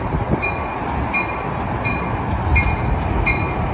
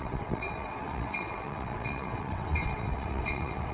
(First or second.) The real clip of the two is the first